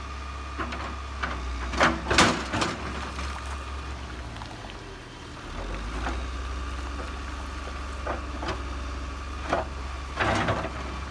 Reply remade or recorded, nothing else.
recorded